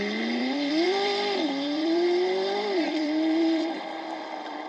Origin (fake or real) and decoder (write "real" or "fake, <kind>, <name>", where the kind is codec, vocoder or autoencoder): fake, vocoder, BigVGAN v2